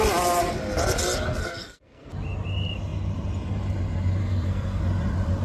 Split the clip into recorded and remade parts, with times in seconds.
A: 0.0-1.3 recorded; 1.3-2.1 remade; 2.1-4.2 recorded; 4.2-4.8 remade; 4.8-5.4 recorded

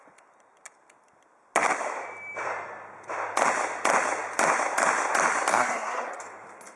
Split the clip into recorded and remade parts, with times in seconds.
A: 0.0-5.5 recorded; 5.5-6.2 remade; 6.2-6.8 recorded

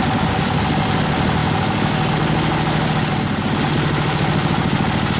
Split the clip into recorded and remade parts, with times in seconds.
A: 0.0-5.2 recorded